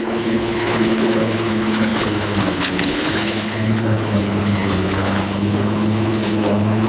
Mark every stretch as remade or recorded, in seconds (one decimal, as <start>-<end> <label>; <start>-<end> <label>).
0.0-6.9 remade

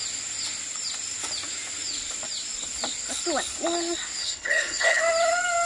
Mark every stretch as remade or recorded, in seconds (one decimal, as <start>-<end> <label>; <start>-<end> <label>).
0.0-4.2 recorded; 4.2-5.0 remade; 5.0-5.7 recorded